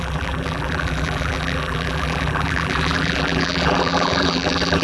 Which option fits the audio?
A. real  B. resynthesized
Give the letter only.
B